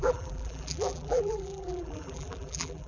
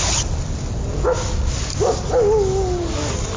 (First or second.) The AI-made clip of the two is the first